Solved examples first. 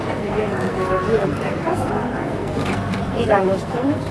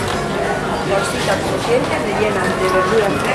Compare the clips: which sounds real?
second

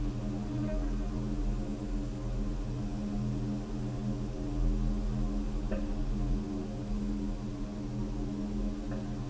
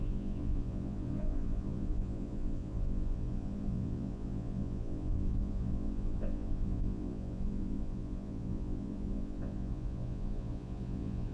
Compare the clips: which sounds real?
first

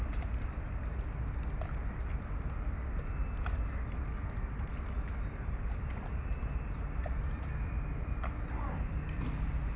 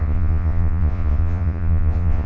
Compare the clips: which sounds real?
first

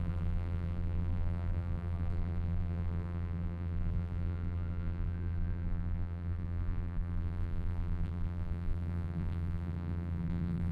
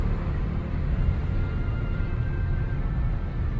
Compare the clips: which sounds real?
second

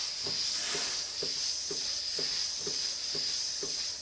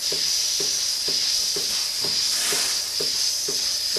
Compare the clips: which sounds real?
first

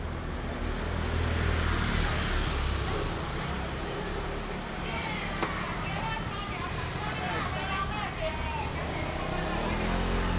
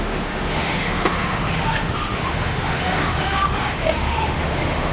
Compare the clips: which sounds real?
first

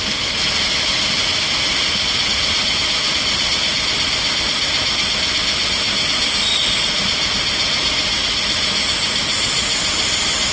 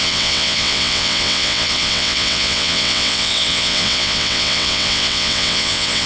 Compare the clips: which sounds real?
first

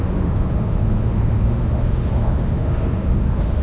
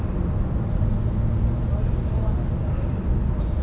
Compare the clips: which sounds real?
second